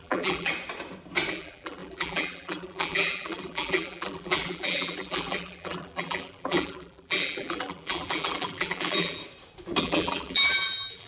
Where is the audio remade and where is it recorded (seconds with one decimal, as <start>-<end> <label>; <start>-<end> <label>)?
0.0-0.5 remade; 0.5-1.3 recorded; 1.3-9.2 remade; 9.2-9.8 recorded; 9.8-11.1 remade